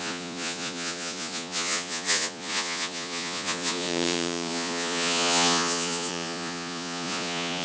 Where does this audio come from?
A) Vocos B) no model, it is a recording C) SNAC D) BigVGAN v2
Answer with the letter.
A